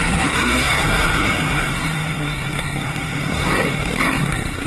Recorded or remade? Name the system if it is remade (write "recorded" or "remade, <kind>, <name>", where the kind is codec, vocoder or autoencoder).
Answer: remade, codec, SNAC